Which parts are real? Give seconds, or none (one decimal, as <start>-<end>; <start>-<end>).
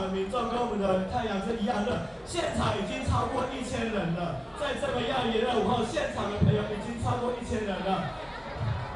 0.0-9.0